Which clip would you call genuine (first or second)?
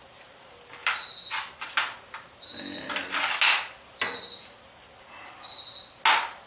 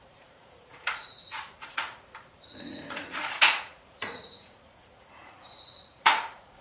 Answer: first